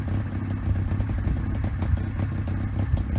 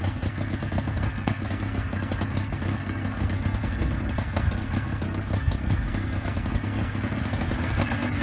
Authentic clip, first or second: first